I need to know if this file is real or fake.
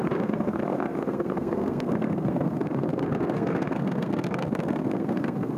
fake